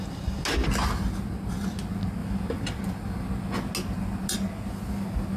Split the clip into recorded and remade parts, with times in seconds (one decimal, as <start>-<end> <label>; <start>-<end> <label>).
0.0-5.4 recorded